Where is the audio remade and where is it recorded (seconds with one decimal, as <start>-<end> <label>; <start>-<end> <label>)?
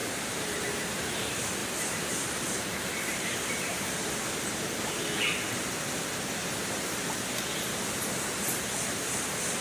0.0-0.6 remade; 0.6-1.6 recorded; 1.6-4.0 remade; 4.0-9.6 recorded